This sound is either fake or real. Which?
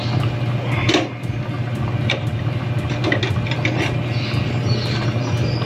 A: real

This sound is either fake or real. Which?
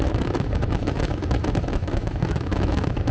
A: fake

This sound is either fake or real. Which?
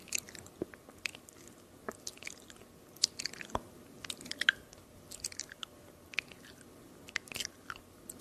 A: real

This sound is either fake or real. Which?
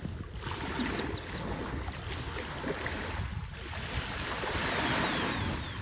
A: real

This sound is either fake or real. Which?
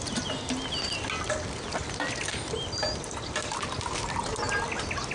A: real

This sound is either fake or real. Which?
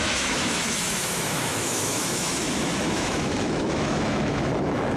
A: fake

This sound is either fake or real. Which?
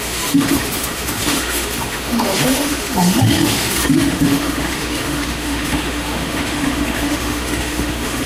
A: fake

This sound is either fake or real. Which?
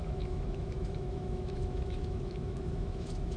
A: fake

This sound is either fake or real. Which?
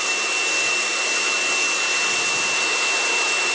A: real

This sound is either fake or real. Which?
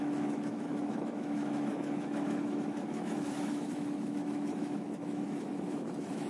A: fake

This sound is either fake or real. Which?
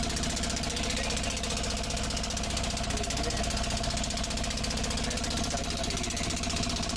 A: real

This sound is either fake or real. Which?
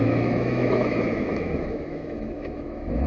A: fake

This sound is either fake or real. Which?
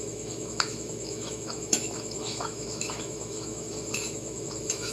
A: fake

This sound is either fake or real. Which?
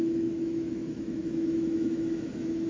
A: fake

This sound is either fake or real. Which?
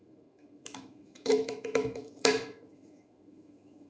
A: fake